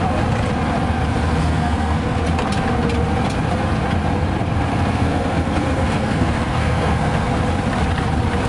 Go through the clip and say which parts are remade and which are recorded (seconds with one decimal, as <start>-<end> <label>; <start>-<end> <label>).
0.0-1.4 recorded; 1.4-2.2 remade; 2.2-4.7 recorded; 4.7-7.3 remade; 7.3-8.5 recorded